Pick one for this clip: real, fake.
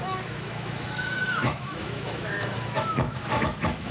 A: fake